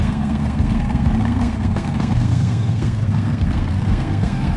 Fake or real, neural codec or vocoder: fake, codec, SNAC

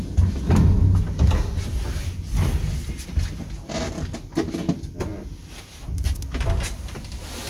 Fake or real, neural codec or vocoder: real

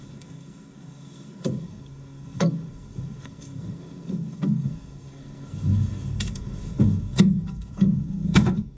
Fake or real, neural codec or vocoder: fake, codec, SNAC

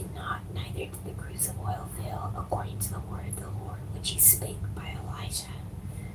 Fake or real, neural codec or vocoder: real